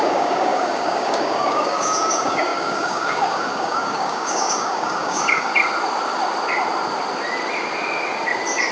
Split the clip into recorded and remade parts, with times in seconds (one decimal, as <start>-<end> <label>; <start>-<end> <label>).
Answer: 0.0-5.5 remade; 5.5-8.7 recorded